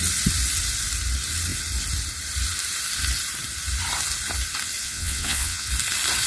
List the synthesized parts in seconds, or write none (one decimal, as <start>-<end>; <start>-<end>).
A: 4.8-5.7